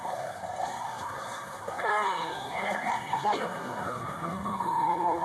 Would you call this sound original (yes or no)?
no